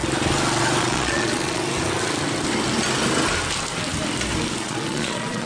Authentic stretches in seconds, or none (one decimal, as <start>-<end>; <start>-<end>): 0.0-0.8; 1.6-4.6